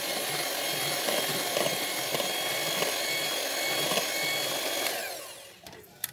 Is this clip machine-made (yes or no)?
no